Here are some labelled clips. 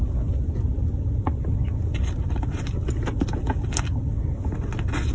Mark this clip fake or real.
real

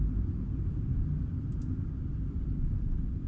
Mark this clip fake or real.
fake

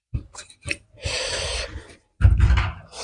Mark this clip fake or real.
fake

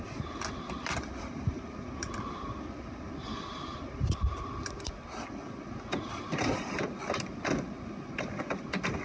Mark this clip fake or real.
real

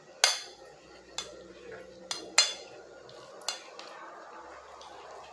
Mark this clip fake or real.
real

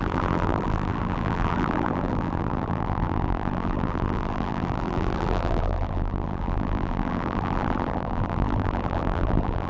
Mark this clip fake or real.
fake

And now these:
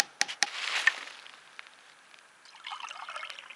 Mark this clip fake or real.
fake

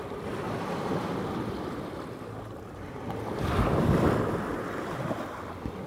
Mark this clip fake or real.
real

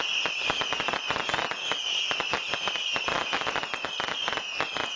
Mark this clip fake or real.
real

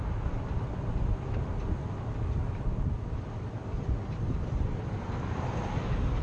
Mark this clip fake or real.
fake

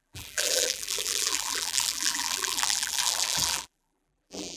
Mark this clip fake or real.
fake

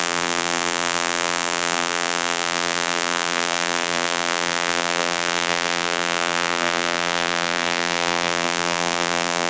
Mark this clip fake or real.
fake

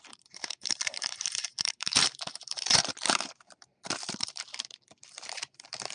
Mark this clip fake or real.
fake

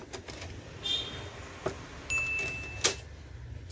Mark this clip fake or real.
real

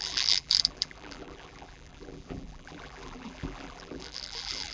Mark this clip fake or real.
fake